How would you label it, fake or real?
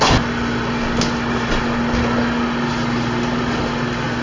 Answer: real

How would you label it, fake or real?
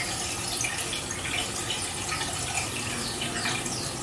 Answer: real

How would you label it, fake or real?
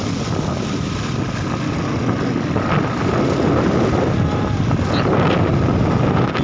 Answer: real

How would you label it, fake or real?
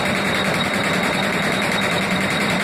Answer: fake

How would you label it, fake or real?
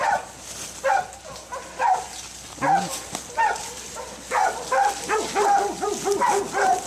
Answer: real